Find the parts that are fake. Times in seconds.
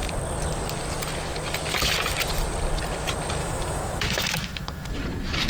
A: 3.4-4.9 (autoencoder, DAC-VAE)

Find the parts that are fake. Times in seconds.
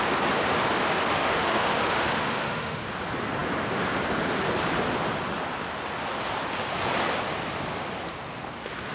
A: 1.1-2.8 (autoencoder, DAC-VAE)